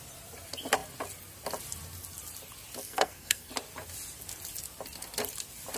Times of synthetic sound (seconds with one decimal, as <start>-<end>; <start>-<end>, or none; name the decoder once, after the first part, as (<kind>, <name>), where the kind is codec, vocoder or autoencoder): 2.8-3.5 (codec, SNAC)